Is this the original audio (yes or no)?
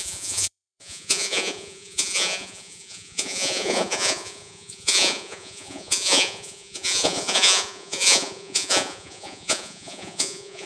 no